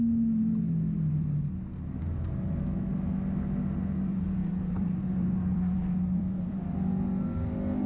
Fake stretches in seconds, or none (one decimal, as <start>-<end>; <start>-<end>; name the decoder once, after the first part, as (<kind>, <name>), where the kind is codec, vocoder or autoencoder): 4.4-6.6 (vocoder, BigVGAN v2)